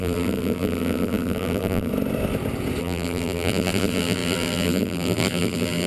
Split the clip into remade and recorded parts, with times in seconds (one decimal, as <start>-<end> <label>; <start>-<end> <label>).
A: 0.0-1.9 remade; 1.9-2.8 recorded; 2.8-5.9 remade